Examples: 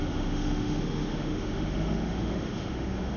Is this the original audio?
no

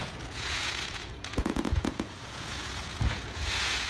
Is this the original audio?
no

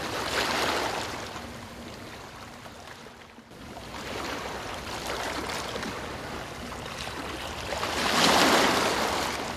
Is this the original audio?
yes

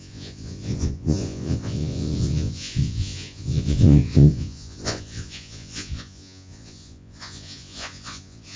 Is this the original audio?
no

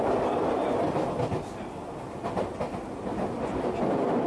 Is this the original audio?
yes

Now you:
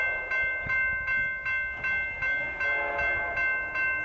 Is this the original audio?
yes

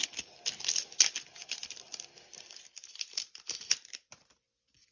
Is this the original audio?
yes